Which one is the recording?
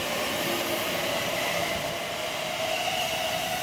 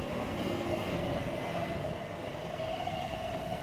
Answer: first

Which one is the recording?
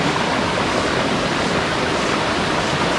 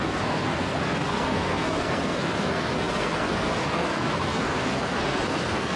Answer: first